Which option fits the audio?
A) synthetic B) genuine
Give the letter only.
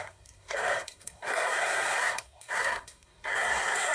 A